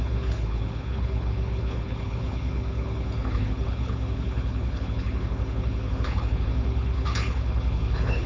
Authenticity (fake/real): fake